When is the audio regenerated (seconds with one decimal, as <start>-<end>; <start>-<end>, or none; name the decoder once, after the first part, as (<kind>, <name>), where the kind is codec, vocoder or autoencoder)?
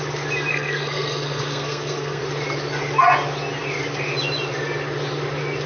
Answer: 0.5-2.2 (codec, SNAC)